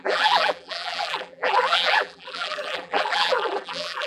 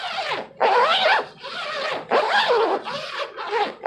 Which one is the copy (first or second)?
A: first